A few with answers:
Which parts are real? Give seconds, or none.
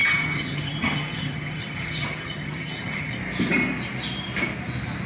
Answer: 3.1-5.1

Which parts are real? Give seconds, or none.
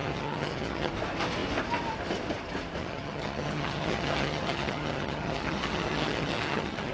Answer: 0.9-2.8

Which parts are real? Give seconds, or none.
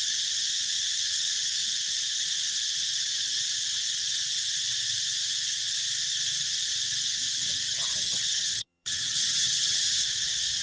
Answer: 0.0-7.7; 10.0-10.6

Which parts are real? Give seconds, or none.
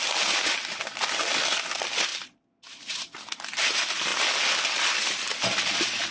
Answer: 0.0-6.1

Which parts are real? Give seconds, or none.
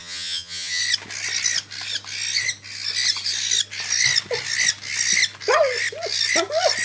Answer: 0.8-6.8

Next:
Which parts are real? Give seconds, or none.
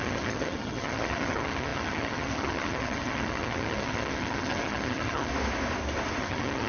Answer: 5.3-6.2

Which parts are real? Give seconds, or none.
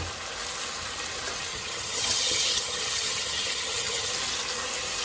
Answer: 0.0-1.5; 4.1-5.0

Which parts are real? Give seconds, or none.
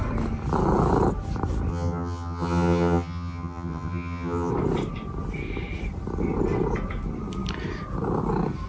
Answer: 0.0-1.7; 4.5-8.7